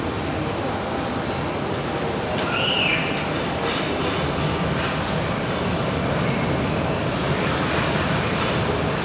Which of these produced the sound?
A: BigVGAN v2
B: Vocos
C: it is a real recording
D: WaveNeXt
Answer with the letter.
C